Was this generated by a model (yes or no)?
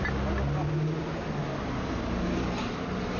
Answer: no